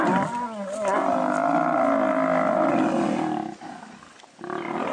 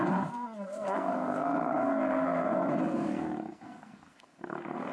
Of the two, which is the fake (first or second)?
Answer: second